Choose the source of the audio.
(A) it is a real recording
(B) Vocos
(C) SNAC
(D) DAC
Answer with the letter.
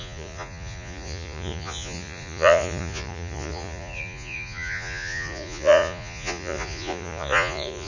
B